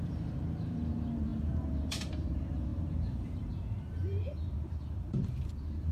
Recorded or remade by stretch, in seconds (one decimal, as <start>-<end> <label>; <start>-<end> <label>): 0.0-5.9 remade